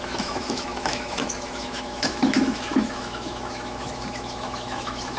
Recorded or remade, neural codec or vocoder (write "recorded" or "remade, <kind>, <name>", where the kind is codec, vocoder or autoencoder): remade, autoencoder, DAC-VAE